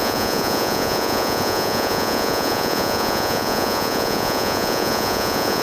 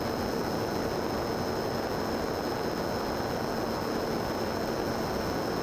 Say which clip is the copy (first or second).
first